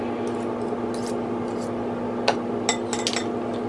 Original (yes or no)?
yes